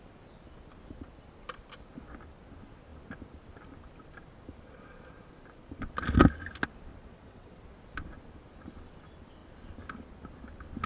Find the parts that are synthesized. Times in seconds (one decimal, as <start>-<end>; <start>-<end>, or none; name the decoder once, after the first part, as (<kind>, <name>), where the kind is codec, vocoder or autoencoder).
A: 6.9-7.5 (vocoder, WaveNeXt)